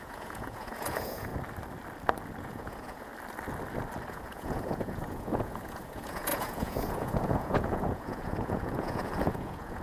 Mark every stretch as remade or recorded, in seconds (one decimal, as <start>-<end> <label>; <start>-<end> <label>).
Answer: 0.0-1.3 remade; 1.3-2.4 recorded; 2.4-3.1 remade; 3.1-4.1 recorded; 4.1-9.8 remade